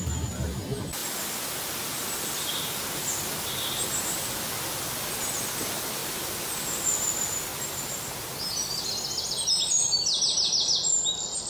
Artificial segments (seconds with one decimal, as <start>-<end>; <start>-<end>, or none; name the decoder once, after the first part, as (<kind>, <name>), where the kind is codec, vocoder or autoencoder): none